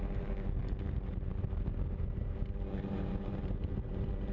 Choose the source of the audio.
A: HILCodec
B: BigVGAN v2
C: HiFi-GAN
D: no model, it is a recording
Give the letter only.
B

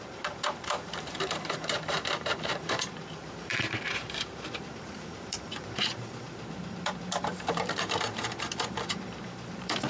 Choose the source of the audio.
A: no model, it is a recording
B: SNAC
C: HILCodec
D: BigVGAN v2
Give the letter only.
D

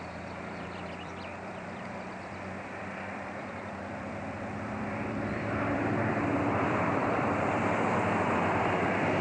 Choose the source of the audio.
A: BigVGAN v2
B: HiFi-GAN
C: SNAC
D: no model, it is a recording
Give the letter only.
A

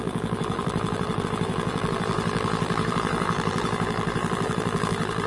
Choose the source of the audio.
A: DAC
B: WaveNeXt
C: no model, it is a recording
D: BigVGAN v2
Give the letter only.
D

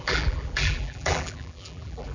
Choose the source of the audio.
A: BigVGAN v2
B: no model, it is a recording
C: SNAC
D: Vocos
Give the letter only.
A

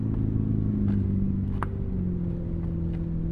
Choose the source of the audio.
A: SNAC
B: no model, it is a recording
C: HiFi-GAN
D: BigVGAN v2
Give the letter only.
B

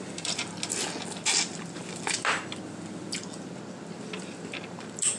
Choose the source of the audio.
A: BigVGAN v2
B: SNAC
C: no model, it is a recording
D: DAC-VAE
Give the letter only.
C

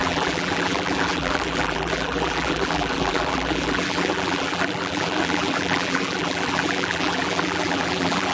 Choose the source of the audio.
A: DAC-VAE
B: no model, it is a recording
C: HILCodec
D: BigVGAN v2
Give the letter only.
D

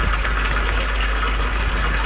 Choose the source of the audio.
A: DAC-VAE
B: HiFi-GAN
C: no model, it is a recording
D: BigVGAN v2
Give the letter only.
C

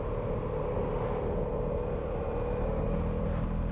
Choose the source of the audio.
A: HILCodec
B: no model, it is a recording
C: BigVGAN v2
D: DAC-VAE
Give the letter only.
B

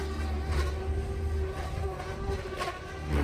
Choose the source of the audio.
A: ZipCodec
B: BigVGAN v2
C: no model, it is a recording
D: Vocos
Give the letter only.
C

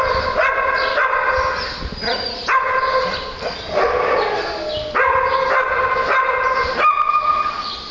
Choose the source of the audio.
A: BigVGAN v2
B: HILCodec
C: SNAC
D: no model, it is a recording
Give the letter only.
D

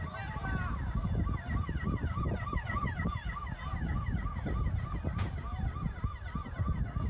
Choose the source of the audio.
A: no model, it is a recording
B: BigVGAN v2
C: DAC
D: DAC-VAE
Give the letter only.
A